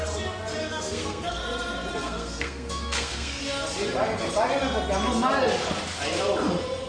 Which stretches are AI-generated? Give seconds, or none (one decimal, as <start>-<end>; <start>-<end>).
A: 0.6-1.4; 1.9-3.4